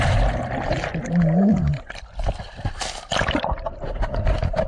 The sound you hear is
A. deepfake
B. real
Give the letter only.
B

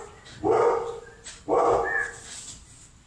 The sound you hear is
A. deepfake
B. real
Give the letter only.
B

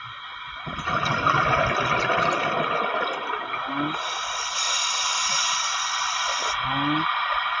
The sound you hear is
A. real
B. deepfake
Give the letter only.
A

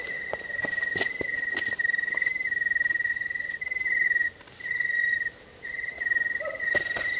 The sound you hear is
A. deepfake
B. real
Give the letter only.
A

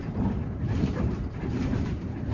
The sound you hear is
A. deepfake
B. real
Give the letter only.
A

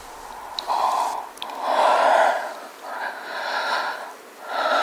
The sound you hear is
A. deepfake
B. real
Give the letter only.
B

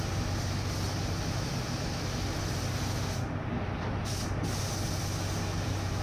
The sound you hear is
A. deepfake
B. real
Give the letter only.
B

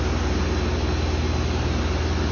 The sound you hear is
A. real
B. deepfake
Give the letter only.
A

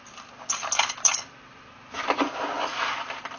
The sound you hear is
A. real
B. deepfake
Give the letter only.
B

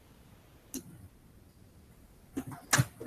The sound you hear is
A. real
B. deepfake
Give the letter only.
A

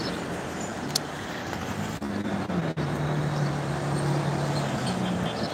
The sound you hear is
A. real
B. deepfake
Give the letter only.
A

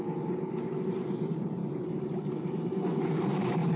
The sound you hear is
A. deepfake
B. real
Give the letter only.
A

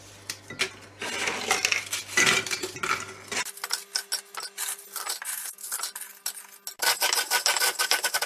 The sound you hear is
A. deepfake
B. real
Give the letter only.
B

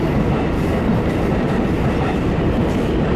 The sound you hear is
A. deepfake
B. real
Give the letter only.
A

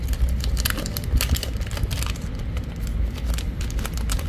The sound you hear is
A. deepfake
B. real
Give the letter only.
B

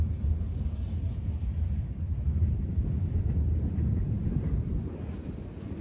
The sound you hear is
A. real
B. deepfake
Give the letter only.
A